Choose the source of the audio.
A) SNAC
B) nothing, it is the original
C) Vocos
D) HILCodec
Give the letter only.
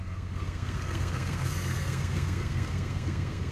A